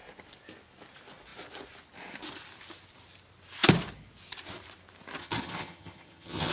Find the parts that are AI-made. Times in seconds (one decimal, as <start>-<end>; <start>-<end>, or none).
5.2-6.5